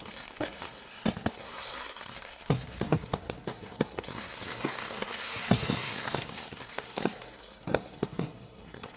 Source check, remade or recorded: remade